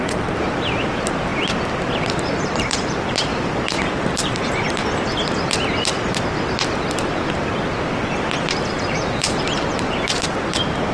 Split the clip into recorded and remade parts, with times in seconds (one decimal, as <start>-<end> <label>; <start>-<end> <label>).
0.0-1.3 remade; 1.3-2.1 recorded; 2.1-4.8 remade; 4.8-8.6 recorded; 8.6-10.9 remade